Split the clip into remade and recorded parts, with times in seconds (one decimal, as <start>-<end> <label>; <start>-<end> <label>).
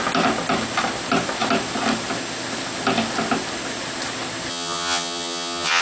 0.0-4.5 recorded; 4.5-5.8 remade